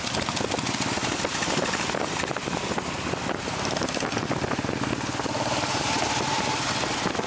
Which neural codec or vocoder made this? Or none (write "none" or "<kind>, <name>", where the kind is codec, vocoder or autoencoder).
none